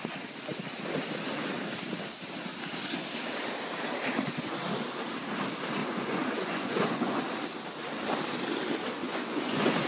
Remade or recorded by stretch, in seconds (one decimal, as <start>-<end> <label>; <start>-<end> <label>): 0.0-5.8 recorded; 5.8-7.2 remade; 7.2-9.0 recorded; 9.0-9.9 remade

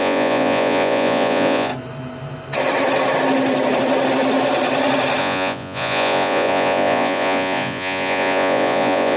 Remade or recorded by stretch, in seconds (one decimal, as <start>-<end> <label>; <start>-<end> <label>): 0.0-1.7 remade; 1.7-5.2 recorded; 5.2-9.2 remade

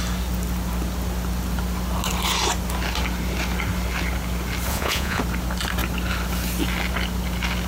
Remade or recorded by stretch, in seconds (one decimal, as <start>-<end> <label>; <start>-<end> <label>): 0.0-4.7 recorded; 4.7-5.2 remade; 5.2-7.7 recorded

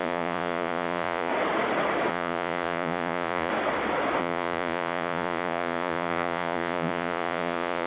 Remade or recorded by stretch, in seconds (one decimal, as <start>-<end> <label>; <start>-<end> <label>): 0.0-1.3 remade; 1.3-2.1 recorded; 2.1-3.5 remade; 3.5-4.2 recorded; 4.2-7.9 remade